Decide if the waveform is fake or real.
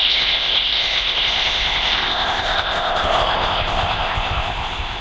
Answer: fake